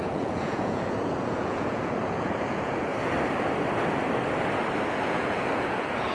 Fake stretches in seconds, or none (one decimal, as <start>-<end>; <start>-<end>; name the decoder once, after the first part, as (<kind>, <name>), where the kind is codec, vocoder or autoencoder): 0.0-2.9 (vocoder, Vocos); 5.0-6.1

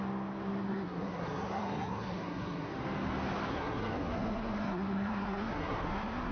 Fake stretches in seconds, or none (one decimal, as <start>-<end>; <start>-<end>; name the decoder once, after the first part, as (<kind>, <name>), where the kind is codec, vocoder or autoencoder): 0.6-2.7 (codec, SNAC); 3.5-6.3

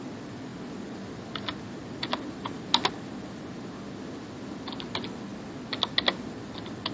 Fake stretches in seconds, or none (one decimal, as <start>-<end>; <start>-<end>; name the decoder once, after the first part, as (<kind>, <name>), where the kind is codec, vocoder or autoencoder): none

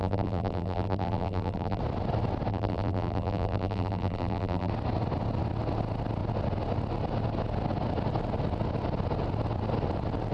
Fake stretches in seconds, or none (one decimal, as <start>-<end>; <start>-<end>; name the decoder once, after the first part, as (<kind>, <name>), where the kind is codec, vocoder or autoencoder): 0.0-1.8 (vocoder, BigVGAN v2); 2.5-4.7